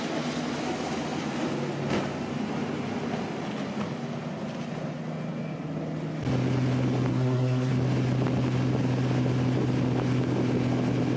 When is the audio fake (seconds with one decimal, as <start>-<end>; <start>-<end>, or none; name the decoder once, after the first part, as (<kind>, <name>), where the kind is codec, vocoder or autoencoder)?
7.1-7.7 (codec, SNAC)